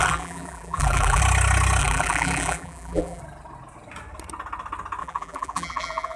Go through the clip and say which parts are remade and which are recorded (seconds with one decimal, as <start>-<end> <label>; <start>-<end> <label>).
0.0-1.2 remade; 1.2-1.8 recorded; 1.8-3.2 remade; 3.2-5.0 recorded; 5.0-6.2 remade